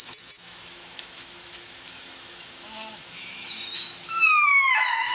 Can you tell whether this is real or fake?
fake